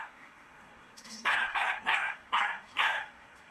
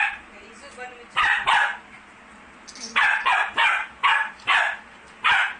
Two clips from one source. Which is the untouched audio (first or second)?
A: second